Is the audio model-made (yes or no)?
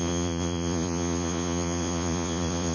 yes